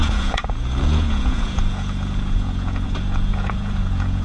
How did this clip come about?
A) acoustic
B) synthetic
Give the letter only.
B